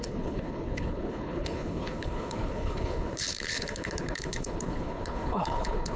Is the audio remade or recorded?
remade